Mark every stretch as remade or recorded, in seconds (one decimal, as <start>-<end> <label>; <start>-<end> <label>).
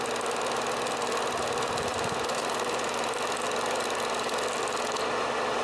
0.0-1.9 recorded; 1.9-3.2 remade; 3.2-5.6 recorded